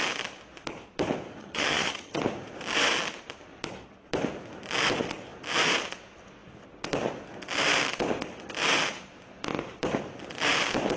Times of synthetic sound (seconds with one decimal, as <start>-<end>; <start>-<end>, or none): 1.4-2.2